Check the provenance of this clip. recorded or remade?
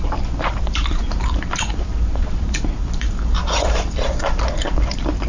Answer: remade